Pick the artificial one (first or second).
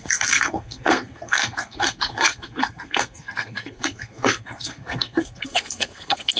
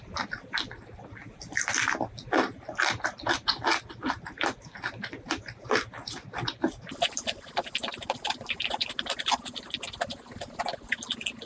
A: first